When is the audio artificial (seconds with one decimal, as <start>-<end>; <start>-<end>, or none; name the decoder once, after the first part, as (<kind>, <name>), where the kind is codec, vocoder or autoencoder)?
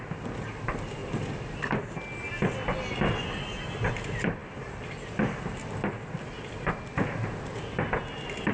none